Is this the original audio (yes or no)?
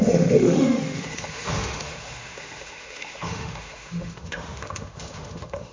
no